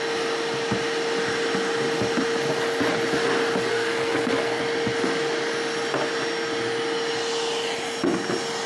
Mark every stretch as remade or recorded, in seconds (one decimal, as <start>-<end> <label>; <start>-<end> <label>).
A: 0.0-3.7 recorded; 3.7-4.6 remade; 4.6-8.7 recorded